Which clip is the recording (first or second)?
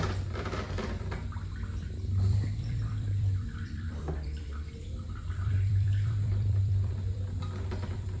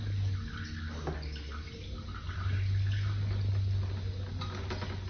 second